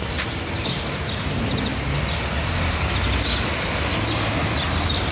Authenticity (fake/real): real